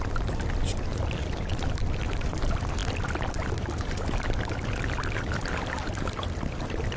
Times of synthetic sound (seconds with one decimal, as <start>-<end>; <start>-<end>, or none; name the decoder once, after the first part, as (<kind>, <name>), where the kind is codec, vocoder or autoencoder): none